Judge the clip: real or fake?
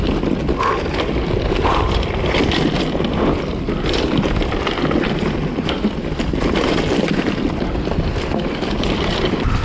real